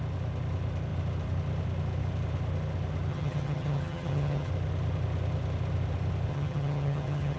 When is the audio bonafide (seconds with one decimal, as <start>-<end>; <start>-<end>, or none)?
0.0-3.1; 4.5-6.3